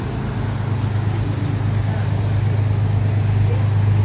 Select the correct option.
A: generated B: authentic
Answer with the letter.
B